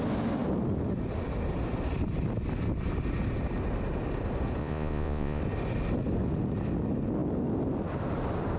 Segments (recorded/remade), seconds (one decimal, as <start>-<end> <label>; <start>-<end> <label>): 0.0-4.6 recorded; 4.6-5.4 remade; 5.4-8.6 recorded